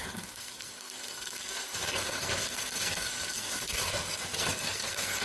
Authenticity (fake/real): fake